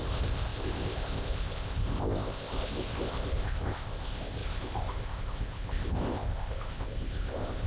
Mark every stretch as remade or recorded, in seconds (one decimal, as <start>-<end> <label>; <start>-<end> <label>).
0.0-7.7 remade